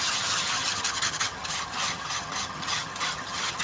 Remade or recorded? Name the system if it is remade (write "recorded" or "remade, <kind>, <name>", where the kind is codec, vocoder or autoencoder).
remade, vocoder, HiFi-GAN